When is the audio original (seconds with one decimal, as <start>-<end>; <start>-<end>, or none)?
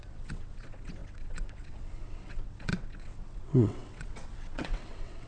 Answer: none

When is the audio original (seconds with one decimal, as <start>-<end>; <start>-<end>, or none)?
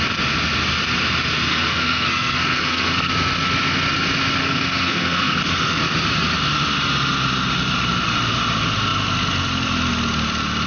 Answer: 0.0-1.5; 3.1-4.4; 5.4-10.7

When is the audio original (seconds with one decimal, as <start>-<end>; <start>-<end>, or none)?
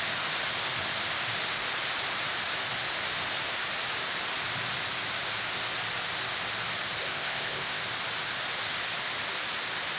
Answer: 0.0-7.0; 7.8-10.0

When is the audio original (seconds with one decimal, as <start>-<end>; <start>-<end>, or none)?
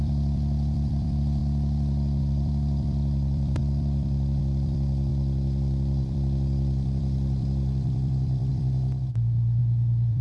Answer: 1.4-2.2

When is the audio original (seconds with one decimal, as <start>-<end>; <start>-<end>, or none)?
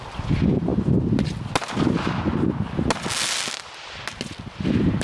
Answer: 0.0-5.0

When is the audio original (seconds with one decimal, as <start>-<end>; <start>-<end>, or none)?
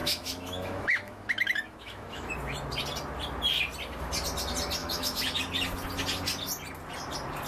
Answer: 2.3-4.8; 5.4-7.5